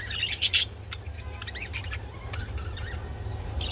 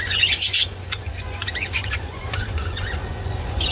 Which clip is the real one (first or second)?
first